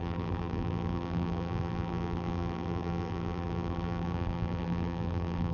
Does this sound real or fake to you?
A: fake